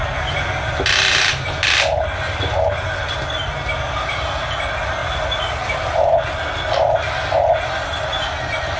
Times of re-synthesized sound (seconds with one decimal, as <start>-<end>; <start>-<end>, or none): none